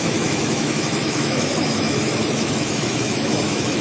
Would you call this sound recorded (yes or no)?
no